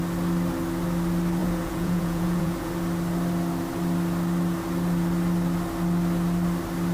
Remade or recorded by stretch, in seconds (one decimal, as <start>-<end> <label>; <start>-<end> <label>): 0.0-1.4 recorded; 1.4-2.7 remade; 2.7-6.9 recorded